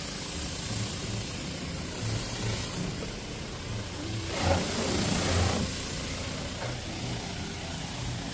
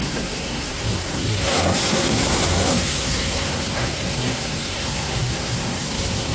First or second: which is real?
first